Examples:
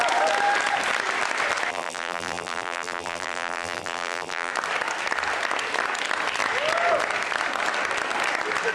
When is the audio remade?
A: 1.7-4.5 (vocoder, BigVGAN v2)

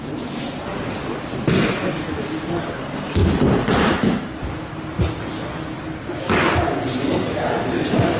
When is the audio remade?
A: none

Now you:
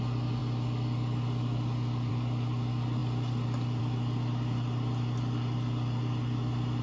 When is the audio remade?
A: none

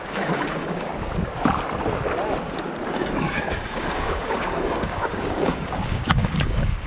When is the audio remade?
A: 0.0-0.9 (codec, DAC); 2.9-6.9

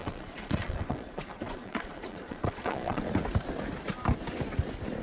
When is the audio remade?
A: 0.0-3.0 (vocoder, Vocos)

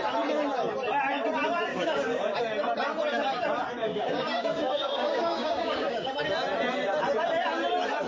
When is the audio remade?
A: 1.7-2.4 (codec, DAC); 3.7-6.1

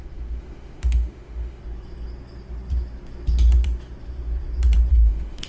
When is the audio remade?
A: 0.0-1.6 (autoencoder, DAC-VAE); 4.9-5.5

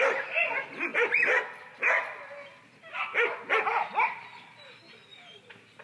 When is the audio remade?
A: none